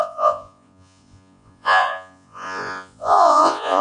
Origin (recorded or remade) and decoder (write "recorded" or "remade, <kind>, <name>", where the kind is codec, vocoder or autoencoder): remade, vocoder, Vocos